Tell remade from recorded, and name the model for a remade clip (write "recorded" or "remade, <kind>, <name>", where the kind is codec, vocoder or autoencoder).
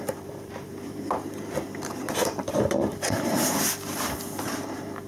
remade, vocoder, BigVGAN v2